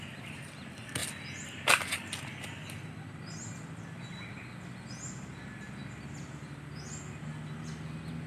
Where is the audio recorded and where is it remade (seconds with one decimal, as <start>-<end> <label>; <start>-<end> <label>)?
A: 0.0-8.3 recorded